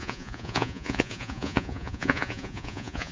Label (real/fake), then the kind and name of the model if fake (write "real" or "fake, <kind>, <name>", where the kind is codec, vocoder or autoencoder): fake, vocoder, Vocos